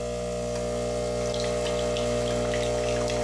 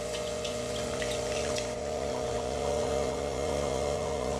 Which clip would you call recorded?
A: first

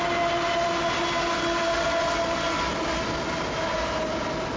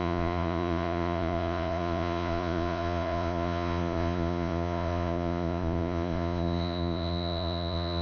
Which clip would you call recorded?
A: first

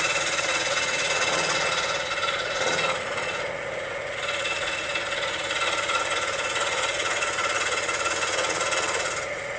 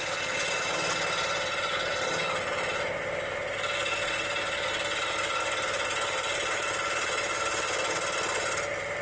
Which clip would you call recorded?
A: second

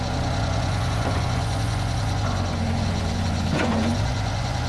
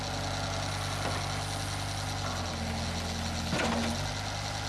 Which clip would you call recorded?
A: second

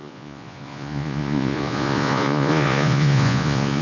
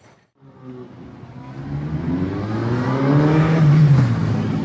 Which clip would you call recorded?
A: second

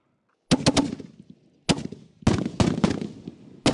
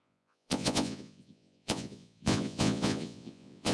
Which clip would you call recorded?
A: first